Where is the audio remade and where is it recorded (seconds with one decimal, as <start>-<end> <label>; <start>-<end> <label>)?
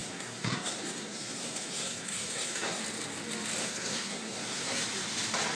0.0-2.8 remade; 2.8-3.6 recorded; 3.6-4.8 remade; 4.8-5.5 recorded